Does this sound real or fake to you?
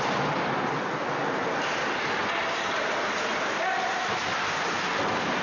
fake